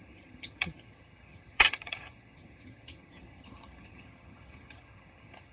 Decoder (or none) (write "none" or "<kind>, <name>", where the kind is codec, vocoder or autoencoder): vocoder, HiFi-GAN